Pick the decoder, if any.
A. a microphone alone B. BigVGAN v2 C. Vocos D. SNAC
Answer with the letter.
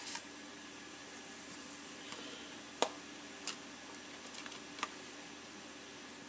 A